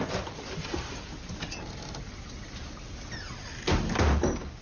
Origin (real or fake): real